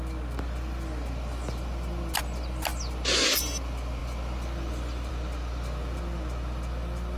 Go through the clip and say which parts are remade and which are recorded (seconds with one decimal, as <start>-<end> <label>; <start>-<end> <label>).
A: 0.0-7.2 recorded

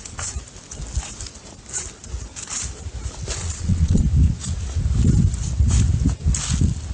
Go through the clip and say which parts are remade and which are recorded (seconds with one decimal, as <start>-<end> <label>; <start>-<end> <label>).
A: 0.0-3.4 recorded; 3.4-4.0 remade; 4.0-6.9 recorded

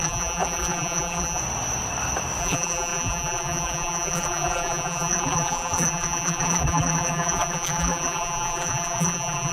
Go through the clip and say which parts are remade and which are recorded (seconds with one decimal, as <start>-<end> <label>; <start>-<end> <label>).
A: 0.0-1.4 remade; 1.4-2.4 recorded; 2.4-9.5 remade

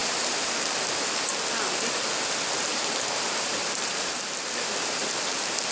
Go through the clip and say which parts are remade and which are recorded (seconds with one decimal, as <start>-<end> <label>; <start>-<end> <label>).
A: 0.0-1.3 remade; 1.3-2.7 recorded; 2.7-5.7 remade

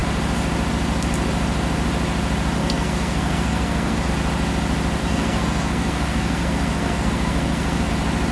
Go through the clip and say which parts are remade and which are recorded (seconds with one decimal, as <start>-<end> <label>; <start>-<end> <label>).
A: 0.0-2.6 recorded; 2.6-4.1 remade; 4.1-5.0 recorded; 5.0-7.9 remade; 7.9-8.3 recorded